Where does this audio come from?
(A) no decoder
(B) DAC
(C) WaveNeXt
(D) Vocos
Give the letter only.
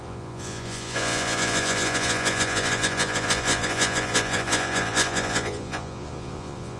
D